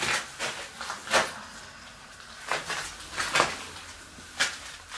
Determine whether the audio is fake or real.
real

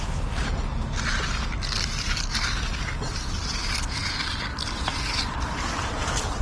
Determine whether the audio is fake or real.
real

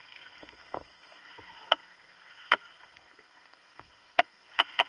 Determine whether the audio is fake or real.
fake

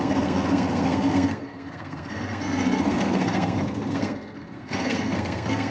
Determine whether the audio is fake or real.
fake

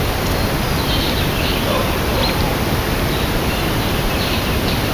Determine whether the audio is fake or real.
real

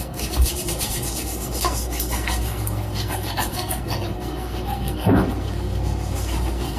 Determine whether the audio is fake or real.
fake